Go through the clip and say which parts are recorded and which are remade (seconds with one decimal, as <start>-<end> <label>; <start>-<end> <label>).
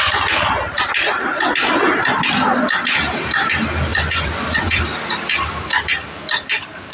0.0-3.9 recorded; 3.9-4.8 remade; 4.8-6.9 recorded